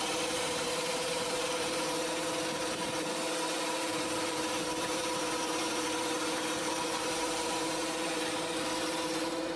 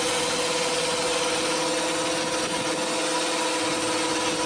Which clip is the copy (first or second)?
first